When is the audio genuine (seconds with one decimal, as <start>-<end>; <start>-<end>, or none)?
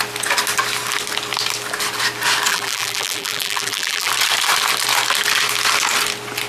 0.0-2.5; 4.1-6.5